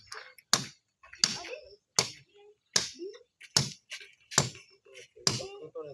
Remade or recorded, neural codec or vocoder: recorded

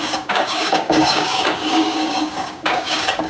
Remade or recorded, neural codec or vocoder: remade, codec, DAC